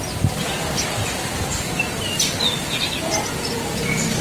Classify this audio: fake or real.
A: real